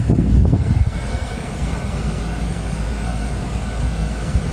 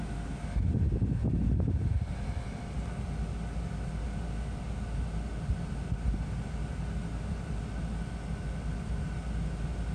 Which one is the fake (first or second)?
first